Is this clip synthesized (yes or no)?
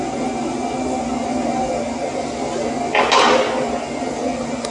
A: no